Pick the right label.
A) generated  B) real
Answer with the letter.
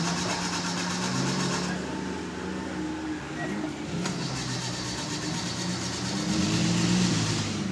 A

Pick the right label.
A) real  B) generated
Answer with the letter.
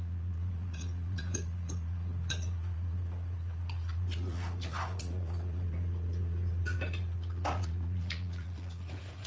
B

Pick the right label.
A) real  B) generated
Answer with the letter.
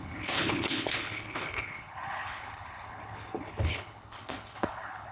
B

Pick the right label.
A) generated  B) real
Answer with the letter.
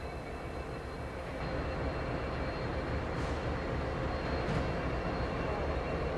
B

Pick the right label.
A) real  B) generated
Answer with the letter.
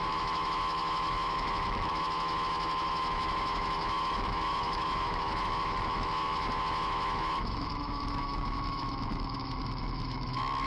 B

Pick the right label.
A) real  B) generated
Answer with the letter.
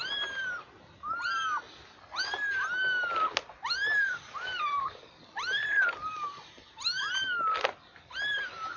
A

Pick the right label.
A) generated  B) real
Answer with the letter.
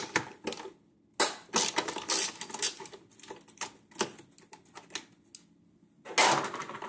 B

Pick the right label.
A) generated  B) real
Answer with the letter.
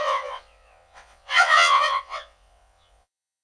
A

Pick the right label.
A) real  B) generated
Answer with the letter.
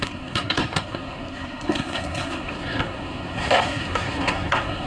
B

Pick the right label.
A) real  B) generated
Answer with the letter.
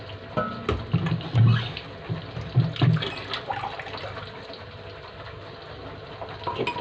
A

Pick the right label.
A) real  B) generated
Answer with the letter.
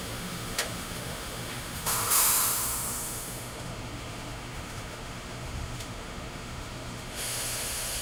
B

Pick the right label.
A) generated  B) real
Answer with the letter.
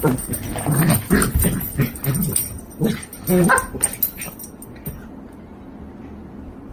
B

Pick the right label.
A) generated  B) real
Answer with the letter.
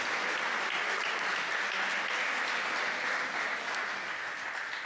B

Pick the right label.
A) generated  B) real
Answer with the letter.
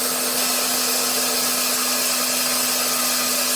B